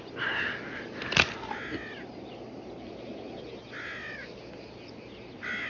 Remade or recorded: recorded